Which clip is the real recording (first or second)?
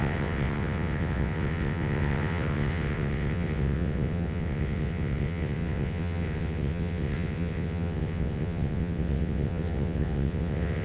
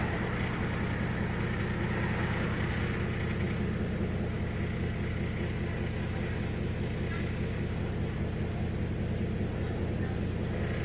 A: second